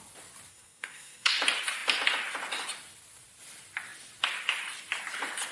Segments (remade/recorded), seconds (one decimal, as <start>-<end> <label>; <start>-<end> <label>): 0.0-0.5 recorded; 0.5-1.3 remade; 1.3-5.5 recorded